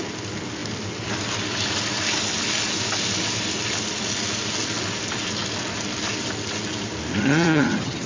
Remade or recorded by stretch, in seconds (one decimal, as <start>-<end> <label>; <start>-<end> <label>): 0.0-7.2 recorded; 7.2-8.1 remade